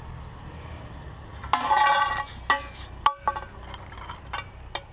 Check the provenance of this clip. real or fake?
real